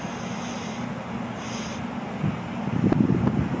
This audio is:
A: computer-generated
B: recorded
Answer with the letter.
B